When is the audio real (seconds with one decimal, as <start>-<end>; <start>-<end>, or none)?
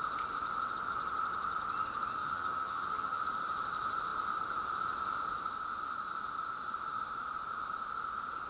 0.0-2.2; 3.2-8.5